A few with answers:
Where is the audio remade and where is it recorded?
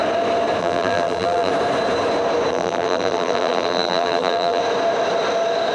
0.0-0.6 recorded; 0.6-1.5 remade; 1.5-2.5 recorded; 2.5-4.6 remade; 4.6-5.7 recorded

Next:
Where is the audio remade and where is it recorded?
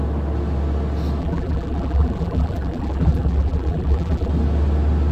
0.0-1.2 recorded; 1.2-4.3 remade; 4.3-5.1 recorded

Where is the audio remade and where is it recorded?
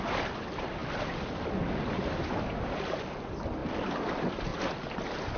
0.0-5.4 recorded